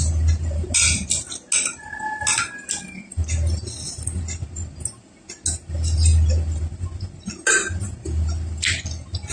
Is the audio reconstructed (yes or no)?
no